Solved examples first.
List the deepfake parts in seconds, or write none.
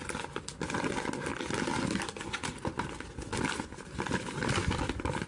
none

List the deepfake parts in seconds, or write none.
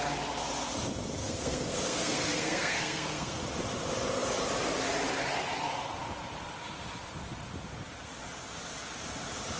1.2-3.4 (codec, SNAC)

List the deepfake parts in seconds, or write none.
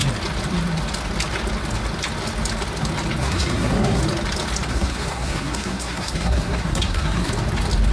3.2-4.0 (codec, SNAC); 4.7-7.3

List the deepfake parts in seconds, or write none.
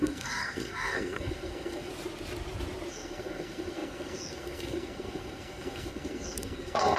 0.0-1.9 (codec, SNAC); 2.9-7.0